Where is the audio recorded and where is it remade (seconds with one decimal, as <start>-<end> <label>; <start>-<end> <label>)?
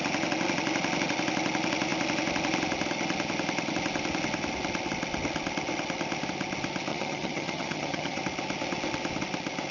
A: 0.0-6.9 recorded; 6.9-8.2 remade; 8.2-9.7 recorded